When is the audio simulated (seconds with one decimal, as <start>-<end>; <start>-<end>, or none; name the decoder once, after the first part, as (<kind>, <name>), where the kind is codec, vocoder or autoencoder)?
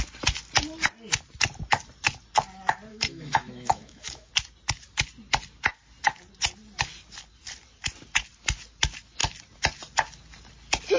2.9-4.3 (autoencoder, DAC-VAE)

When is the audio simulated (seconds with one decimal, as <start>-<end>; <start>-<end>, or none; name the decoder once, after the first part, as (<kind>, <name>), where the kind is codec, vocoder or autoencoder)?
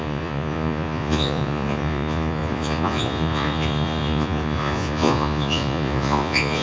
0.0-6.6 (vocoder, Vocos)